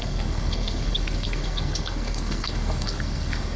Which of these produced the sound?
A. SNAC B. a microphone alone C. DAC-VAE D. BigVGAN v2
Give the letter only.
A